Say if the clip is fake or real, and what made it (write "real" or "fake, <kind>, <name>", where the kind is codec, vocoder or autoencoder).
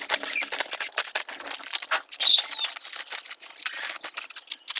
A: real